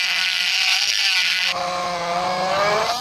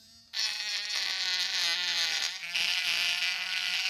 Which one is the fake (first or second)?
first